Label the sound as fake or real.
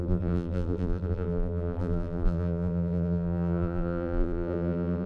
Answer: fake